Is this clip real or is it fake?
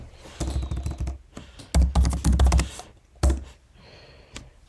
real